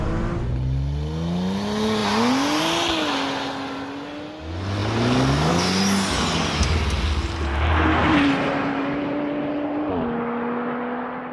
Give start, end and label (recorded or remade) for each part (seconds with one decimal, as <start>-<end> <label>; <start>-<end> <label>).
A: 0.0-8.0 recorded; 8.0-9.9 remade; 9.9-11.3 recorded